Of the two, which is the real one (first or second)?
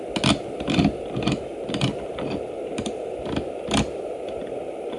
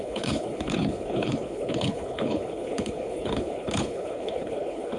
first